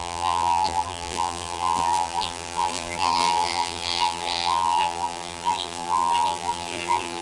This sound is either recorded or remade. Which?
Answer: remade